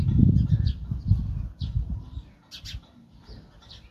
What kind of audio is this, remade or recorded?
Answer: recorded